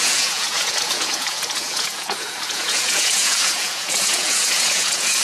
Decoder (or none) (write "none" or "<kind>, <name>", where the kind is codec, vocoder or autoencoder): vocoder, Vocos